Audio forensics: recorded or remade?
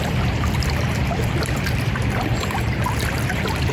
remade